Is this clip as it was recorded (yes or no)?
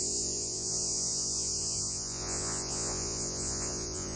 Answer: no